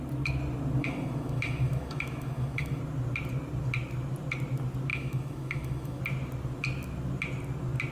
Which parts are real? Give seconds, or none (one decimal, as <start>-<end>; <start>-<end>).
0.0-0.8; 2.8-4.9; 6.0-7.9